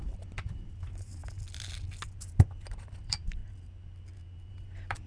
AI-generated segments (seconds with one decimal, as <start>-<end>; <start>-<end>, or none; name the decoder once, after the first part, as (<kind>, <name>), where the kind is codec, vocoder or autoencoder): 0.0-1.2 (vocoder, BigVGAN v2); 2.9-3.4; 4.5-5.1